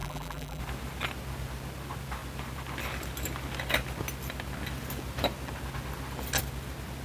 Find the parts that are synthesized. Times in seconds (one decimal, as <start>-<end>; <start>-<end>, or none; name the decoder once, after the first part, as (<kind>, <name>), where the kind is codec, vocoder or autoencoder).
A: 0.0-0.6 (vocoder, BigVGAN v2)